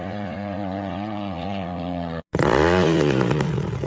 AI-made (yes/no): yes